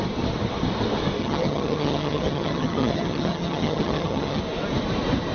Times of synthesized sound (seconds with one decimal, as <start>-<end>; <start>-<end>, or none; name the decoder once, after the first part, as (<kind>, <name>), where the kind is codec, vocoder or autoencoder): 1.2-4.4 (vocoder, HiFi-GAN)